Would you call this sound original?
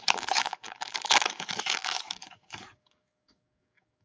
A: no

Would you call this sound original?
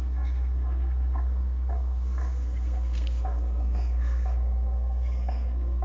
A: no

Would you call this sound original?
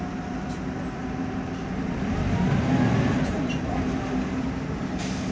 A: no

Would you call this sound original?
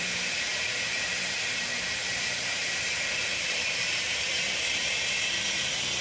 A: no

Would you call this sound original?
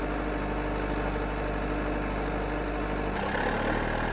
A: yes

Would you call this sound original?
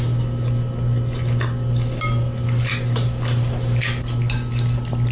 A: yes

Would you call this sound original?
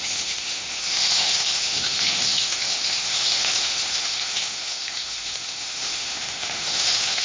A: no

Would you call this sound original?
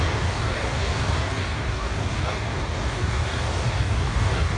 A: no